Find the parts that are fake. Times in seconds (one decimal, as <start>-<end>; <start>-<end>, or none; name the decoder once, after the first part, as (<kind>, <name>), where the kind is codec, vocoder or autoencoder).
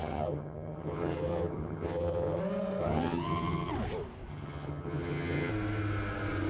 0.0-2.4 (vocoder, HiFi-GAN); 2.8-3.7; 4.3-5.5